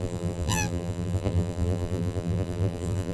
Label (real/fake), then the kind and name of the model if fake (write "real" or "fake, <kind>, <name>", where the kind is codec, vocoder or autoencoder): fake, vocoder, BigVGAN v2